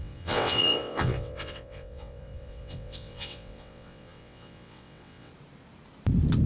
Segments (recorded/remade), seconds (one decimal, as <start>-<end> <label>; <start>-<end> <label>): 0.0-5.3 remade; 5.3-6.5 recorded